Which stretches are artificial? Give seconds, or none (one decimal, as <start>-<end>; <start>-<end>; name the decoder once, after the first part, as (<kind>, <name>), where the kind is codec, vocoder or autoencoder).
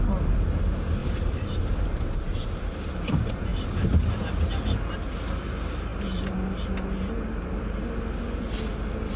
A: 1.0-1.6 (vocoder, BigVGAN v2)